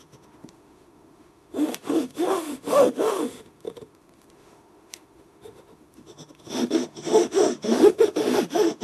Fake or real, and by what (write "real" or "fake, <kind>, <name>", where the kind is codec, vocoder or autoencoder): fake, autoencoder, DAC-VAE